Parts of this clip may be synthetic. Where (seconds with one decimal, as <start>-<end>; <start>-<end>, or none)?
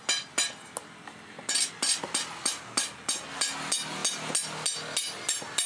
none